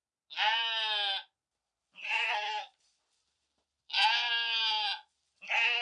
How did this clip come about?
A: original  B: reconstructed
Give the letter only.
A